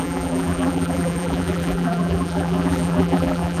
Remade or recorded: remade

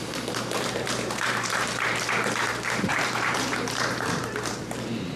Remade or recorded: remade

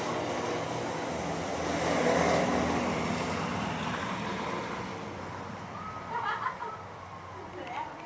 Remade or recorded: recorded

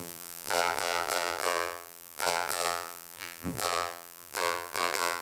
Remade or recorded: remade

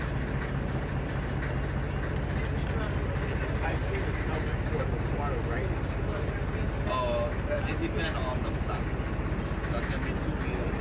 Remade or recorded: recorded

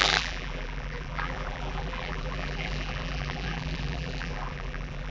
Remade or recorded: remade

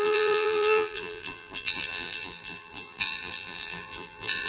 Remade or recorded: remade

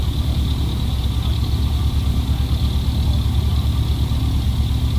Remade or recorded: recorded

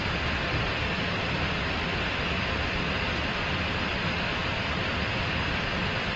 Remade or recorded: remade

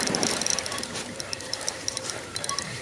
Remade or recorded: remade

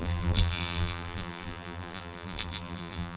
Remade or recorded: remade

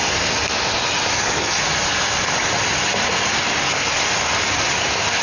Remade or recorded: recorded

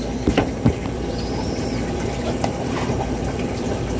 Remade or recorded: remade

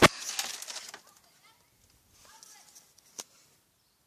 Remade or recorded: recorded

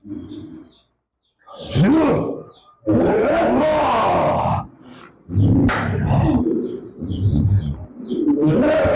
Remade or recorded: remade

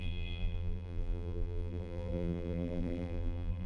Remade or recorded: remade